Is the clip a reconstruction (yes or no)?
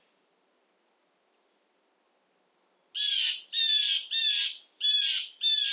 no